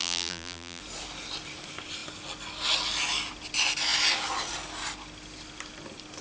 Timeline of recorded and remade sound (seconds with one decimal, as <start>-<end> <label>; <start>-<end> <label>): 0.0-0.8 remade; 0.8-6.2 recorded